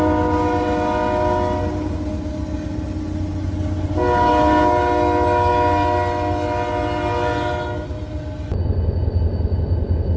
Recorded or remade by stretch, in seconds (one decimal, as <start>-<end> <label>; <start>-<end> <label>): 0.0-10.2 recorded